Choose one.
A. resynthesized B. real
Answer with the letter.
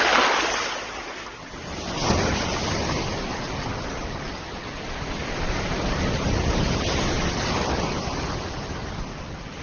B